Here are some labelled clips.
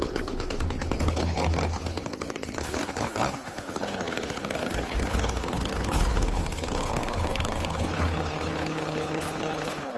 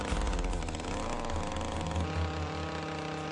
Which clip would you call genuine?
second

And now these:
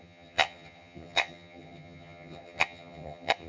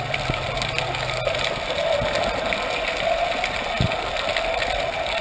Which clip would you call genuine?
second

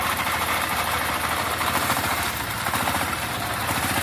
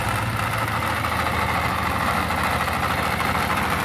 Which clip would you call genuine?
second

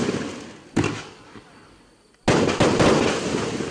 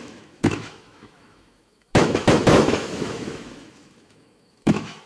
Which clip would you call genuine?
first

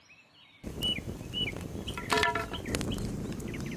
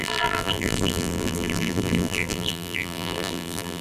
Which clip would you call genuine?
first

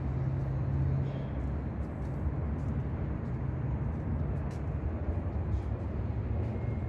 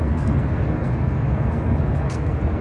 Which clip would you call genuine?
first